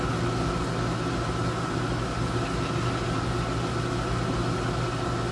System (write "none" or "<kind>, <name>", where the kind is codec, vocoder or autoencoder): none